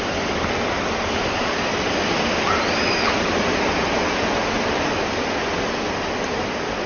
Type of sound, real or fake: real